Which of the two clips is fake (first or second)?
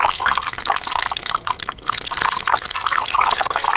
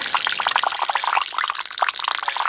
first